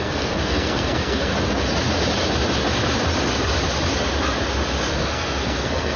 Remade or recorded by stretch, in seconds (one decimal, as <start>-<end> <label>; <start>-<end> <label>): 0.0-1.3 remade; 1.3-4.9 recorded; 4.9-6.0 remade